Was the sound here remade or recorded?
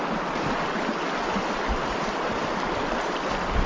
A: recorded